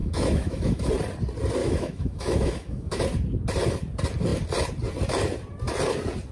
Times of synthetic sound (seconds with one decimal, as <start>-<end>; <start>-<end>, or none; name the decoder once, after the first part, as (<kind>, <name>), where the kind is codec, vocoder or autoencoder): 0.0-0.9 (autoencoder, DAC-VAE); 1.6-3.0